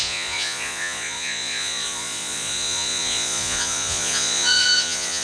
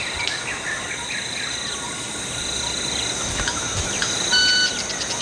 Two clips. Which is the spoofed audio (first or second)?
first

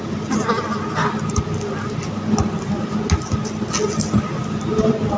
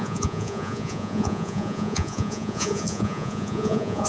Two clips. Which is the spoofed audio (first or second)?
second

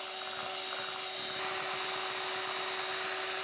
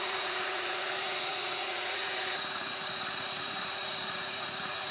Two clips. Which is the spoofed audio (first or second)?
second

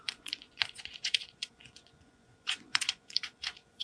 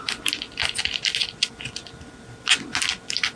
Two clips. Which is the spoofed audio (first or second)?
first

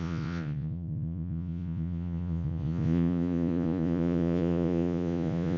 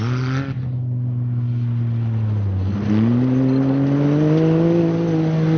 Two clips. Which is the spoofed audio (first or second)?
first